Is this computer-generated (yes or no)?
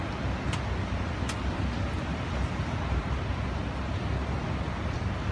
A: no